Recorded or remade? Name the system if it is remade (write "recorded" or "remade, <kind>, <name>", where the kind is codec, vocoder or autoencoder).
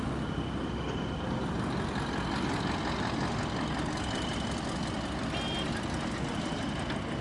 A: recorded